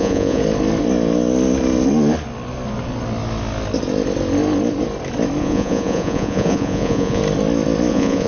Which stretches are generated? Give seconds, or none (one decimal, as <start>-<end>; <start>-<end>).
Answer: 0.0-0.4; 5.4-7.2; 7.9-8.3